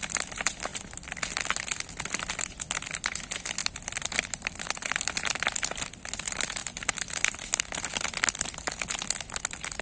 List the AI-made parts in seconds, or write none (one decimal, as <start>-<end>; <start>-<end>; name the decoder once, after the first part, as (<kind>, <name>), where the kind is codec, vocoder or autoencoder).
0.7-1.3 (vocoder, BigVGAN v2); 3.6-5.1; 6.6-7.4